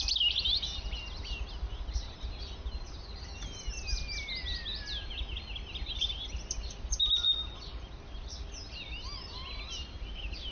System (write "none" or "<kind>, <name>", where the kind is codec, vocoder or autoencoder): none